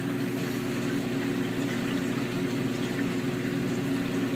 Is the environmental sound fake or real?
real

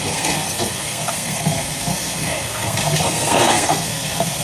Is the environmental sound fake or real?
fake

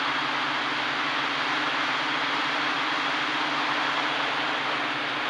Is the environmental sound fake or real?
real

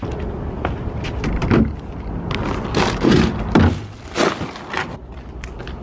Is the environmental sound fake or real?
real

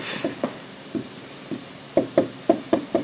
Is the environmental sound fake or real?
fake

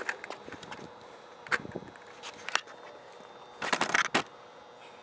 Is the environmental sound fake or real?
real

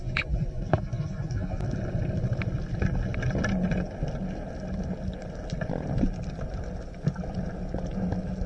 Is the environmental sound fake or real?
real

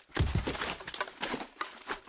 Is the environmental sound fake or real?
real